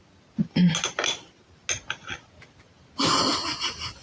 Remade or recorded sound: recorded